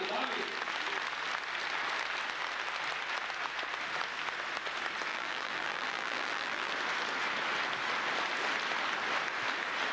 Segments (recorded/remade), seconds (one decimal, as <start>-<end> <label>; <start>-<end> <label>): 0.0-5.1 recorded; 5.1-6.7 remade; 6.7-9.9 recorded